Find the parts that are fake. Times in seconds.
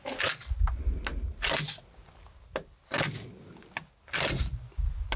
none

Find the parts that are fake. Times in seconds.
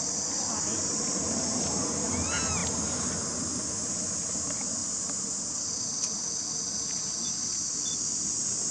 none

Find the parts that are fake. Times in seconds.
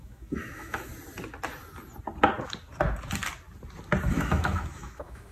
0.0-0.9 (autoencoder, DAC-VAE); 4.1-5.3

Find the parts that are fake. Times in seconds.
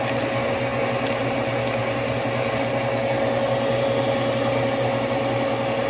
none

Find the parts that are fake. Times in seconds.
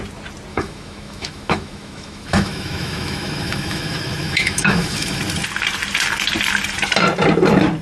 0.5-5.2 (autoencoder, DAC-VAE)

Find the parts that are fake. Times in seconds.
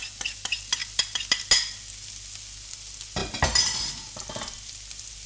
none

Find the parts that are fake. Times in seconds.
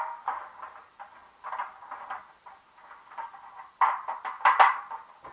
none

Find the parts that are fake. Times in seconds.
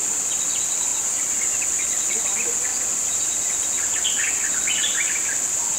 none